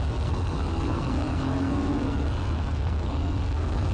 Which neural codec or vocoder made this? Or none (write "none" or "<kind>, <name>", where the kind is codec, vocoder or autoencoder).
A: codec, SNAC